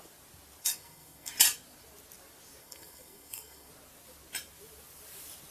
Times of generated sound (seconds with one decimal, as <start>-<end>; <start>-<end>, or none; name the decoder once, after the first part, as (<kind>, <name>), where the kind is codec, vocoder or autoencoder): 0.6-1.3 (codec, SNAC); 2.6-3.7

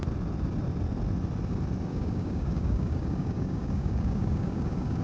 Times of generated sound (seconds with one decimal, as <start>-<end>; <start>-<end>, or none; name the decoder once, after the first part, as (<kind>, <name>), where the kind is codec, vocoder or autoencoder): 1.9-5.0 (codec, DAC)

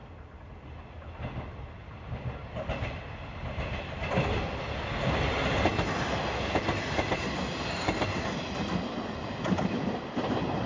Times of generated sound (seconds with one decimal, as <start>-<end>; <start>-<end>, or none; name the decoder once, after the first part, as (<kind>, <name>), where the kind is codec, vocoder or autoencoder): 0.0-0.5 (vocoder, BigVGAN v2)

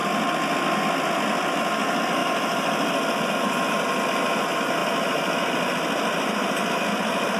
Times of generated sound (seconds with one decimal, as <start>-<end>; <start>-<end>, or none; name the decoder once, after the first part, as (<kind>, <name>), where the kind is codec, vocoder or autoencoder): none

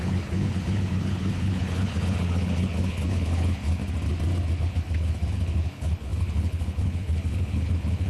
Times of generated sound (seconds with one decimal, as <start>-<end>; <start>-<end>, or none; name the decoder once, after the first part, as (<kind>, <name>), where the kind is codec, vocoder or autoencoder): 0.0-3.8 (codec, HILCodec); 4.6-8.1

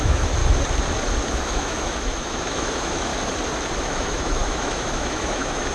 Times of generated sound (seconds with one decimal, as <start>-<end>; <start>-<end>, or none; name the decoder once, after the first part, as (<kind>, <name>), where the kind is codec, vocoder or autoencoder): 0.0-0.4 (autoencoder, DAC-VAE); 1.3-3.1; 3.8-5.7

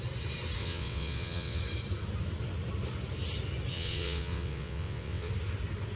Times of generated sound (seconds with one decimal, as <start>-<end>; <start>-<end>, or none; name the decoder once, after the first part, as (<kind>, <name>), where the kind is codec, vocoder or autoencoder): 0.6-1.6 (vocoder, WaveNeXt); 3.7-5.3

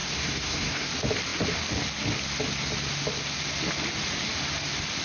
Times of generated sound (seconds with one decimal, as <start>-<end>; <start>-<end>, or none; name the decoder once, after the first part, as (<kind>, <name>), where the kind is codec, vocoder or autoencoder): 0.0-0.9 (codec, SNAC)